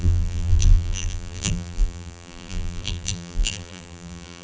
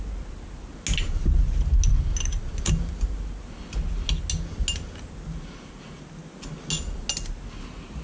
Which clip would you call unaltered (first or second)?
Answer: second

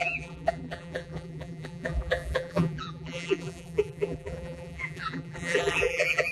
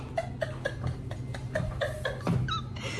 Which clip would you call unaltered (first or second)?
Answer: second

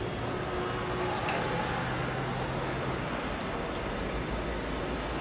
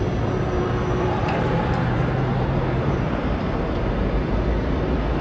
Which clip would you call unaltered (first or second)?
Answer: first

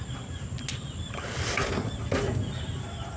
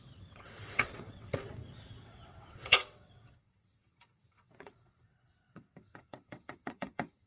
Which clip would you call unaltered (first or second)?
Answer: first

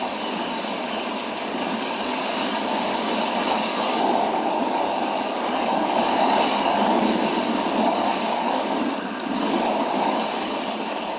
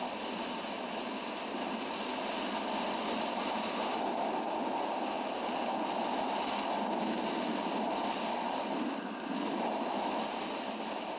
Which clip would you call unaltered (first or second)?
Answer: second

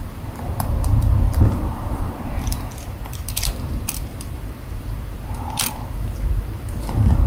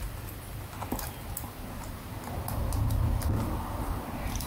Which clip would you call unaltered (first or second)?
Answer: second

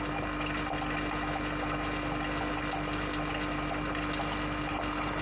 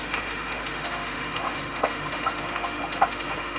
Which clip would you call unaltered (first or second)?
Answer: first